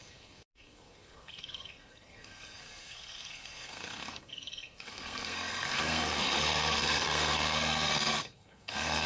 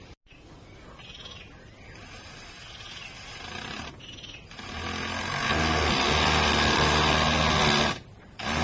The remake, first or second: first